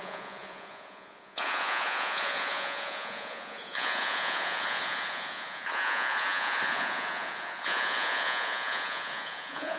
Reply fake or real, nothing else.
fake